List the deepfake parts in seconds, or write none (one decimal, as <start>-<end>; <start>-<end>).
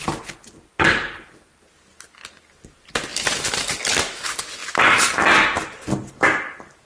3.1-3.8